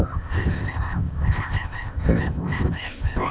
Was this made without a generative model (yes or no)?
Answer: no